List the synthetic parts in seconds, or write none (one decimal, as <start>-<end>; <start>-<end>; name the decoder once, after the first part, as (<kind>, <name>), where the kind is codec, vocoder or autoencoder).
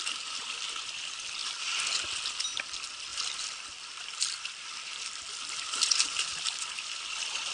1.4-2.4 (vocoder, BigVGAN v2); 3.1-6.6